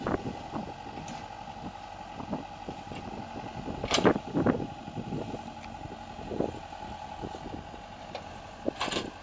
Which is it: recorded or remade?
recorded